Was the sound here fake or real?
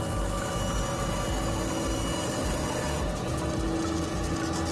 real